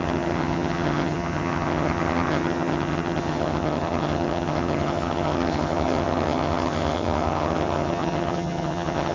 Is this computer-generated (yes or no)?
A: yes